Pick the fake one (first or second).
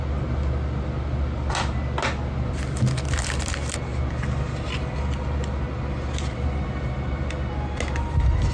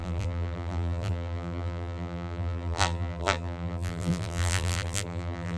second